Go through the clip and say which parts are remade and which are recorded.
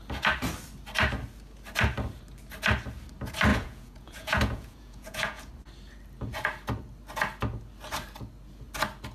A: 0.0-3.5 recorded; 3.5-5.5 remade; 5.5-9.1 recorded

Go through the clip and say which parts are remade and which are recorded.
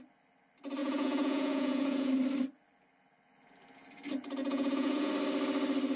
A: 0.0-0.8 recorded; 0.8-2.1 remade; 2.1-4.4 recorded; 4.4-5.1 remade; 5.1-6.0 recorded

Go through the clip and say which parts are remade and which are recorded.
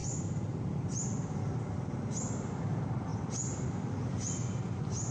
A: 0.0-5.1 recorded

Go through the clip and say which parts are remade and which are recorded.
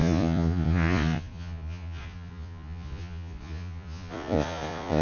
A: 0.0-5.0 remade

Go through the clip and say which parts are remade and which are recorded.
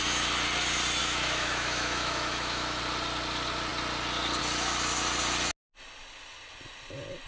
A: 0.0-1.0 recorded; 1.0-2.8 remade; 2.8-7.3 recorded